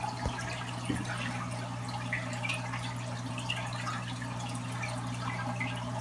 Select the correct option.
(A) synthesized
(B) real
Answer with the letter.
B